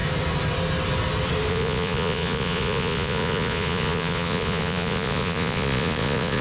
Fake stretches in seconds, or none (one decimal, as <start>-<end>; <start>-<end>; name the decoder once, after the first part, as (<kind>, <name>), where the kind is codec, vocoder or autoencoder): 1.5-6.4 (vocoder, Vocos)